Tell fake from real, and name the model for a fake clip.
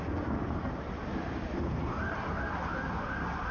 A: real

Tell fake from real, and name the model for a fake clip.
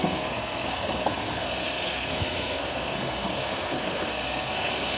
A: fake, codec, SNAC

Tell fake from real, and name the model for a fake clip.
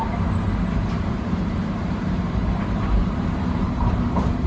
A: fake, vocoder, BigVGAN v2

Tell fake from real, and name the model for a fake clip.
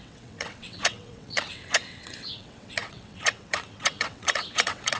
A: fake, vocoder, WaveNeXt